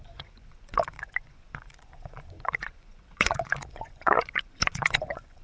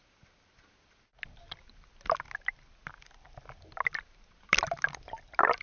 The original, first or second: second